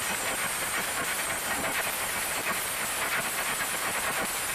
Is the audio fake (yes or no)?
no